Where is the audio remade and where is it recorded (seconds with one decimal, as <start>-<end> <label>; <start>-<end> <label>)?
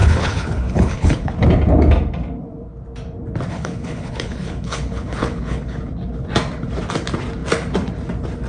0.0-1.3 remade; 1.3-3.5 recorded; 3.5-5.8 remade; 5.8-8.5 recorded